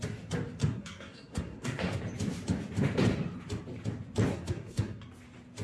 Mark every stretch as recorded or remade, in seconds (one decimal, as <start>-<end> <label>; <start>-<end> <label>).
0.0-0.6 recorded; 0.6-2.0 remade; 2.0-4.3 recorded; 4.3-5.0 remade; 5.0-5.6 recorded